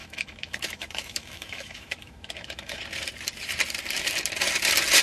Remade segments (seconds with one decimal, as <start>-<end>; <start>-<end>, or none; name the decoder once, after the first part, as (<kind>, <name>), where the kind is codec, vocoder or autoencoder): 0.0-2.8 (autoencoder, DAC-VAE)